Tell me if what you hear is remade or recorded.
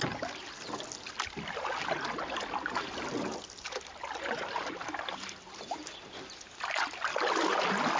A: recorded